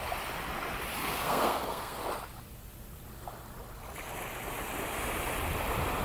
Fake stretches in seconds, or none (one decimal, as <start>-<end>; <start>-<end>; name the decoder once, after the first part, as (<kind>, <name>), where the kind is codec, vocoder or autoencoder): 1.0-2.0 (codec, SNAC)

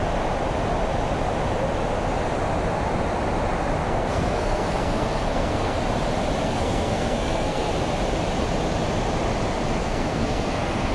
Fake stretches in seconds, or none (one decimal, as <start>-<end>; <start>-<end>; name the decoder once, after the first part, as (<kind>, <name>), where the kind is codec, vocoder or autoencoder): 3.8-5.8 (codec, SNAC); 6.4-7.7; 9.8-10.9

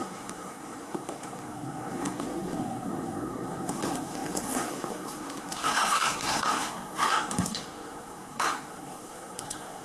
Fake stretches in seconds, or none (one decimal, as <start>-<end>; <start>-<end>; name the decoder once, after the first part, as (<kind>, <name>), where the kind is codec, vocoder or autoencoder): 0.0-9.8 (codec, SNAC)